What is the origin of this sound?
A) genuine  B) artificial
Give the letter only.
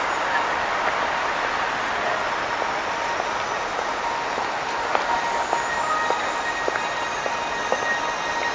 A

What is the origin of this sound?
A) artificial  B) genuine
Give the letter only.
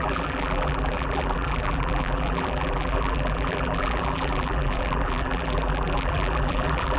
A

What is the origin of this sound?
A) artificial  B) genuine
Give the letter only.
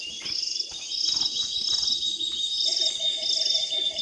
B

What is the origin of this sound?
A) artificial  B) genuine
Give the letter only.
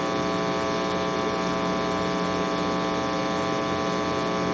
B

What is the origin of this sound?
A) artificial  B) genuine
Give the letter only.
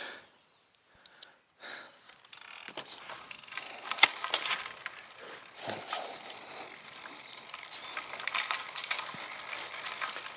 B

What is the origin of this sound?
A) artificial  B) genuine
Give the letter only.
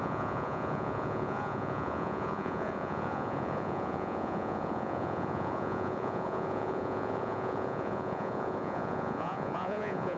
A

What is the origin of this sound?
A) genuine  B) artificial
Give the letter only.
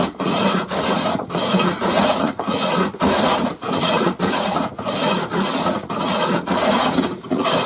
B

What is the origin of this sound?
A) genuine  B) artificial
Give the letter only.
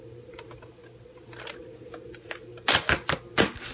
A